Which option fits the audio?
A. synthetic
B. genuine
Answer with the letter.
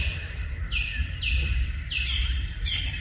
A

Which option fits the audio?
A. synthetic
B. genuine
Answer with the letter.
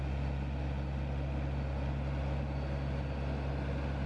B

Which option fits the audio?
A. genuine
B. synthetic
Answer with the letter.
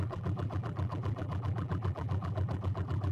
B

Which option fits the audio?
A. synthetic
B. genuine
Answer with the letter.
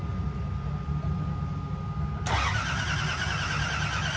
B